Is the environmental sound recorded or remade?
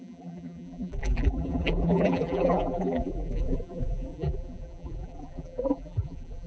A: remade